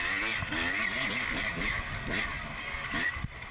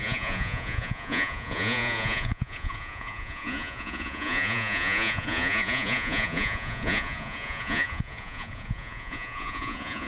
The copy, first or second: second